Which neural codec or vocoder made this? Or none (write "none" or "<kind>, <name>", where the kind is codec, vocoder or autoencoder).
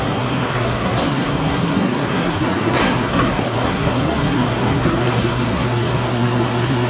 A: codec, SNAC